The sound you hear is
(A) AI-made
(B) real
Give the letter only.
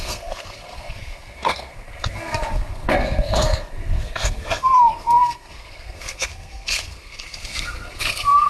A